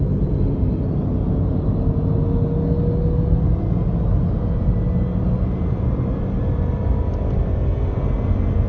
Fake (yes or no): no